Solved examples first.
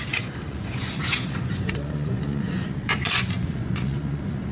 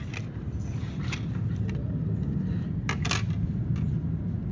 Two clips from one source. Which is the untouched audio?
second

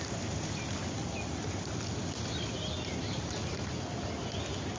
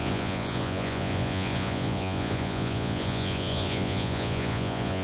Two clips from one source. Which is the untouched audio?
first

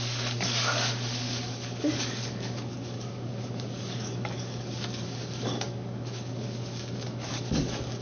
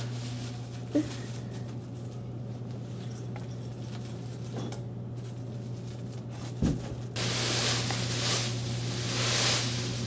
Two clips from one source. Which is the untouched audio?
second